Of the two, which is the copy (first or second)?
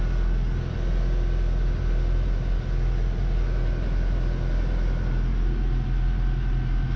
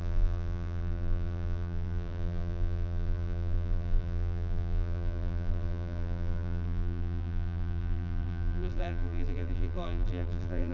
second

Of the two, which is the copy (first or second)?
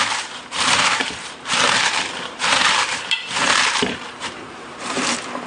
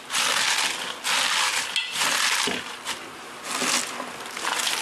first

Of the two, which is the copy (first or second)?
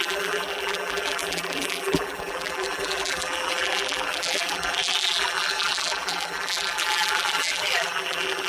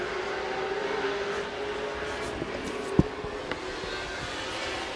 first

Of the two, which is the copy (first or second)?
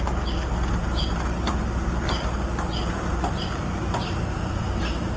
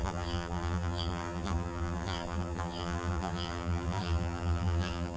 second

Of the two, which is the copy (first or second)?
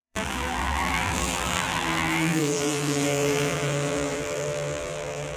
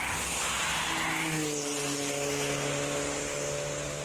first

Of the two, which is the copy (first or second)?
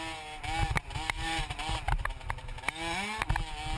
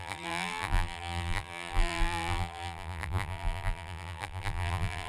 second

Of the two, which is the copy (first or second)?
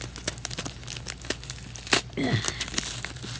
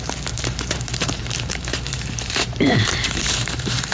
second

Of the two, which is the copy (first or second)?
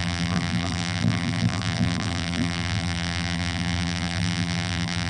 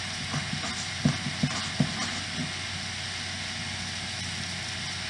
first